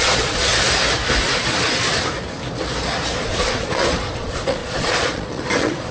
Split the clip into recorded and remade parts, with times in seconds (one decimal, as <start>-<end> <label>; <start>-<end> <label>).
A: 0.0-0.5 remade; 0.5-3.2 recorded; 3.2-5.9 remade